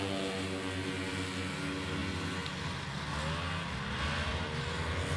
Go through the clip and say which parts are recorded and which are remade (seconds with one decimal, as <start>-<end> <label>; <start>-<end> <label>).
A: 0.0-5.2 recorded